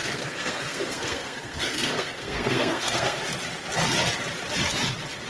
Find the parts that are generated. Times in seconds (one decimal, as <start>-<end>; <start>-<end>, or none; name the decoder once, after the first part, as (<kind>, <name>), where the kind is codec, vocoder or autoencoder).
0.0-3.2 (codec, SNAC)